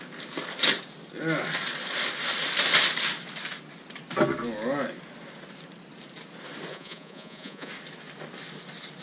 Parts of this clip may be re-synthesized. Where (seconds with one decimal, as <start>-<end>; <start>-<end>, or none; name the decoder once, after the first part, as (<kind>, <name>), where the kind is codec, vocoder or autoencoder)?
6.7-7.7 (vocoder, Vocos)